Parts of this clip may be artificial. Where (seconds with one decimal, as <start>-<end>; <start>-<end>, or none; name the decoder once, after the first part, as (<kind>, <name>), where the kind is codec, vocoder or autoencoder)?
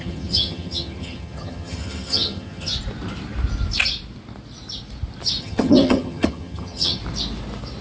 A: 0.0-2.7 (vocoder, HiFi-GAN); 5.4-7.0